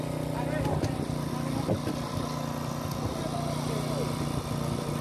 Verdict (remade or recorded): recorded